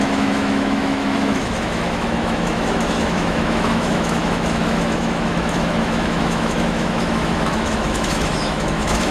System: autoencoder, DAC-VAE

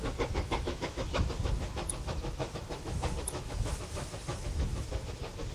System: autoencoder, DAC-VAE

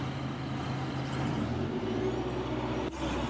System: none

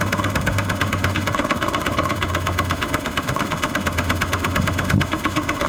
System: autoencoder, DAC-VAE